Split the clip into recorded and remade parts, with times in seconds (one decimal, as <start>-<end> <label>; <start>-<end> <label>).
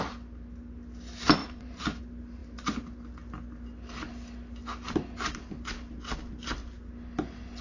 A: 0.0-1.4 recorded; 1.4-2.0 remade; 2.0-7.6 recorded